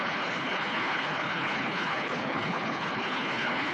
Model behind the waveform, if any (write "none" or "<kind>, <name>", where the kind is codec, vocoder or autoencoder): codec, HILCodec